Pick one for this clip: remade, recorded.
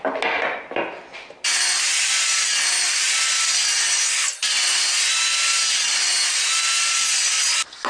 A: recorded